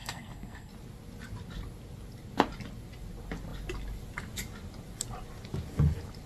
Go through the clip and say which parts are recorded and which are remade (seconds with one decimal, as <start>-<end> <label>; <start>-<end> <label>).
0.0-0.7 remade; 0.7-6.3 recorded